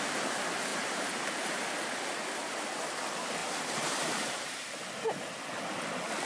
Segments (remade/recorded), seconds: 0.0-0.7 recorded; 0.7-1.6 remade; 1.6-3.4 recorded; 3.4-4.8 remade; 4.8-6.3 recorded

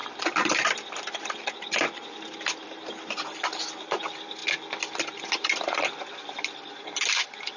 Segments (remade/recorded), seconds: 0.0-7.6 remade

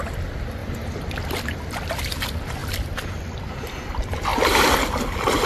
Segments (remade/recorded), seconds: 0.0-2.6 recorded; 2.6-3.4 remade; 3.4-5.5 recorded